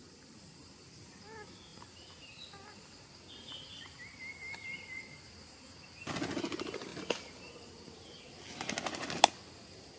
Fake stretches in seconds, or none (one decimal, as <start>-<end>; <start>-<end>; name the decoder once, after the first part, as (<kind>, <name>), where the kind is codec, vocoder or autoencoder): none